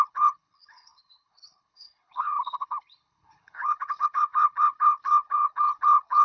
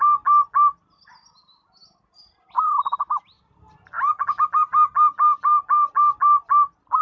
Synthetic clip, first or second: first